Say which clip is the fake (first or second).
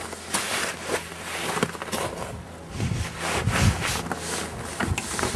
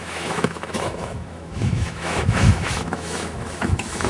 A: second